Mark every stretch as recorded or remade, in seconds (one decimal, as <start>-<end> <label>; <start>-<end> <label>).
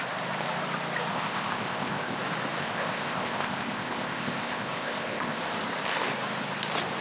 0.0-1.1 recorded; 1.1-2.2 remade; 2.2-2.6 recorded; 2.6-5.4 remade; 5.4-7.0 recorded